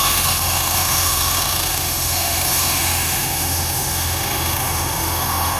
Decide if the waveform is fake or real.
fake